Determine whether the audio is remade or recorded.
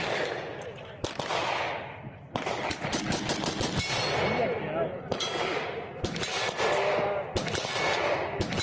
recorded